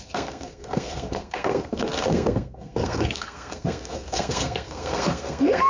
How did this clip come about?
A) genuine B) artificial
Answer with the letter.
B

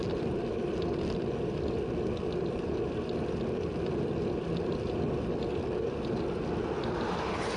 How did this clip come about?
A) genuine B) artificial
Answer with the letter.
A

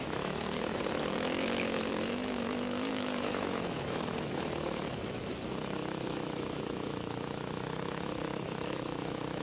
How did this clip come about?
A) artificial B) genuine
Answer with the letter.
A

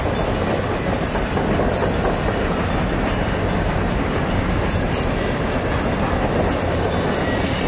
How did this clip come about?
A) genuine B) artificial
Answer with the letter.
A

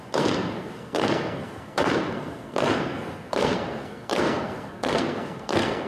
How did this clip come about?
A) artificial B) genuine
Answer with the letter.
A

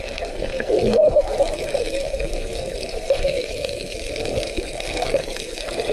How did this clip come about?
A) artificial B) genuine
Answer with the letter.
A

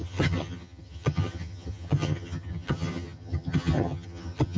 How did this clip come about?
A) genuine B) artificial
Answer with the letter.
B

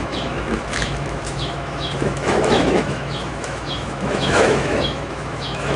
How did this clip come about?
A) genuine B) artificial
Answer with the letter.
B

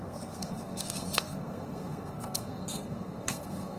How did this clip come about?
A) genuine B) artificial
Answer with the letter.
B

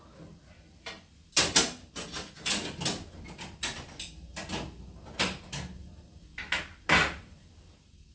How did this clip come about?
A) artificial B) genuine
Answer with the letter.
B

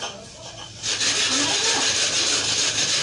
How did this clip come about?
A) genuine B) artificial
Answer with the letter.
A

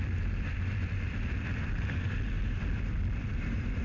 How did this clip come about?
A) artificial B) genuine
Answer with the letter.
A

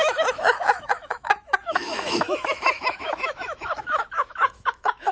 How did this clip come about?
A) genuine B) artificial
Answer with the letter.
B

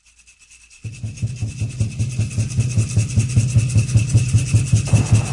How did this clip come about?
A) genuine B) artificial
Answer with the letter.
A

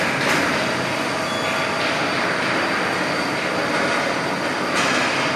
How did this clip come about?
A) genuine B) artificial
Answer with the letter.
A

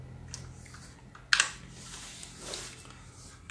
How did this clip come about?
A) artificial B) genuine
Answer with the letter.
B